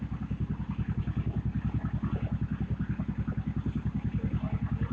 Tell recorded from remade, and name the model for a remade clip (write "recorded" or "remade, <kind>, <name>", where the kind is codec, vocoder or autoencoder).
recorded